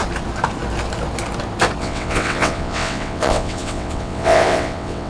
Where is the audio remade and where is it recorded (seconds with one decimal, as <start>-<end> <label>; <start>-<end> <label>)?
0.0-1.8 recorded; 1.8-5.1 remade